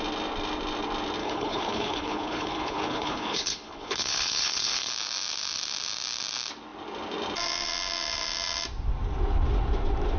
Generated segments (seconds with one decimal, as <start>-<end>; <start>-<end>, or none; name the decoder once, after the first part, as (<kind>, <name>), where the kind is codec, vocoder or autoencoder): 1.2-4.9 (codec, HILCodec)